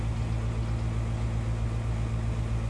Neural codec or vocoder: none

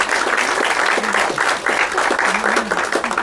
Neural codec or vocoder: none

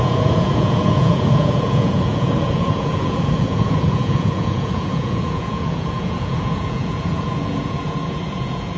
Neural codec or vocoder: vocoder, Vocos